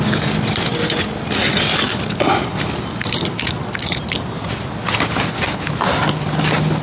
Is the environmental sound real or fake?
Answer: real